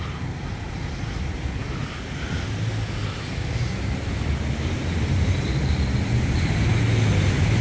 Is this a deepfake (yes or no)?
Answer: no